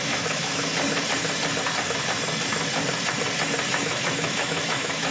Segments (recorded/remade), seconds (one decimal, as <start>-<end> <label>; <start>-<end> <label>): 0.0-0.7 remade; 0.7-3.8 recorded; 3.8-5.1 remade